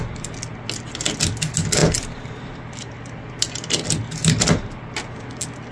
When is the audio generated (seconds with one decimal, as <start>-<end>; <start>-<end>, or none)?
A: none